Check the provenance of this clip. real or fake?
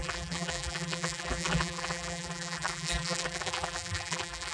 fake